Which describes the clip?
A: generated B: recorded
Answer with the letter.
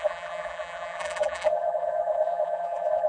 A